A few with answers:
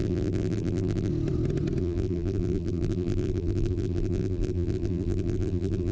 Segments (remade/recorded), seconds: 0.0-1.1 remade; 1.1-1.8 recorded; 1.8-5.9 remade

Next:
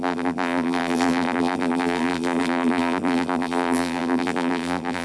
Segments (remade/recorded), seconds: 0.0-5.0 remade

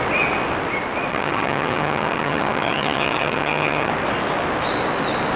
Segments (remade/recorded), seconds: 0.0-1.1 recorded; 1.1-3.9 remade; 3.9-5.4 recorded

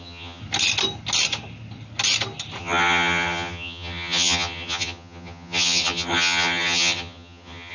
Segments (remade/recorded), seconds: 0.0-0.4 remade; 0.4-2.6 recorded; 2.6-7.7 remade

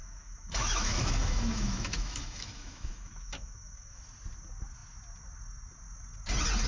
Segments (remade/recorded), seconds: 0.0-4.0 remade; 4.0-6.7 recorded

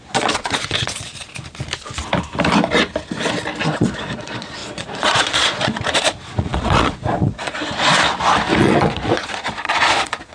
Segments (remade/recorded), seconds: 0.0-1.1 remade; 1.1-3.6 recorded; 3.6-7.9 remade; 7.9-8.6 recorded; 8.6-10.3 remade

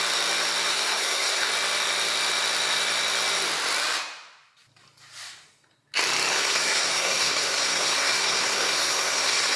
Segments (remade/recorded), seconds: 0.0-0.7 recorded; 0.7-1.5 remade; 1.5-6.3 recorded; 6.3-9.6 remade